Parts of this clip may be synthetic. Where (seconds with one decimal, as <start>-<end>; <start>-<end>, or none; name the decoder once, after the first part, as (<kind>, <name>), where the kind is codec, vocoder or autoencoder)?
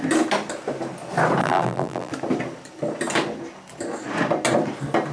1.4-2.1 (vocoder, BigVGAN v2)